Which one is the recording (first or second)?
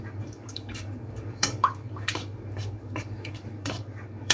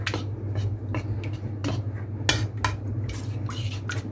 second